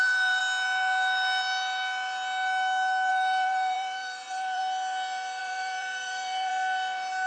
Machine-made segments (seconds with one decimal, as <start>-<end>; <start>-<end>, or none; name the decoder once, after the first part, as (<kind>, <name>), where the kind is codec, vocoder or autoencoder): 0.0-0.4 (vocoder, BigVGAN v2); 3.1-4.6; 5.4-6.5